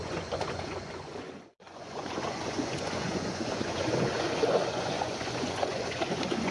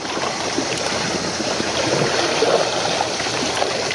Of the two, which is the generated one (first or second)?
first